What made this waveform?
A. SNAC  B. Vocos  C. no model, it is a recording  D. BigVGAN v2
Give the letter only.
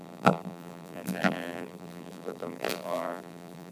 D